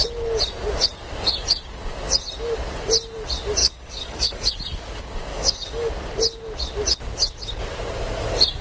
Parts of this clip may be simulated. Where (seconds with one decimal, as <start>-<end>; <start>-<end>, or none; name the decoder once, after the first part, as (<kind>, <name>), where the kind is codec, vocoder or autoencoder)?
3.6-4.5 (codec, DAC); 5.3-5.9